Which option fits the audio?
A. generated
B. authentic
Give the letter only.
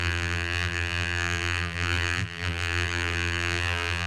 A